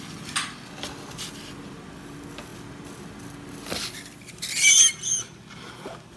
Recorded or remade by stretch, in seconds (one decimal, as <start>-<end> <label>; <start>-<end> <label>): 0.0-6.2 recorded